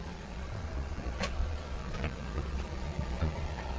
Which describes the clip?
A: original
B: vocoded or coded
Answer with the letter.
B